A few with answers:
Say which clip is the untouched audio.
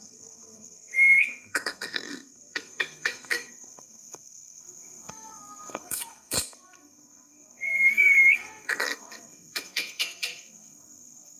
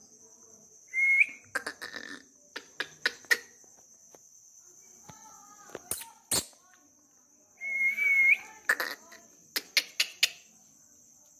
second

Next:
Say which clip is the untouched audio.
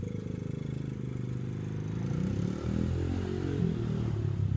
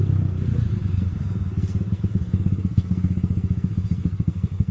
first